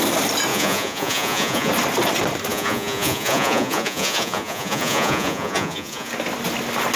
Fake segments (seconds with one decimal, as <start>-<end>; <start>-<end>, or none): 0.5-1.7; 2.5-6.1